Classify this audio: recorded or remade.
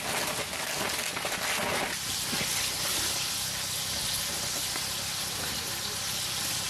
recorded